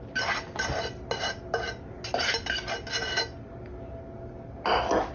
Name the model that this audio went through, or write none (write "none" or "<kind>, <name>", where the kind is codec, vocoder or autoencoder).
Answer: none